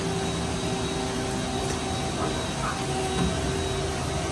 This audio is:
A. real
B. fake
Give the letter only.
A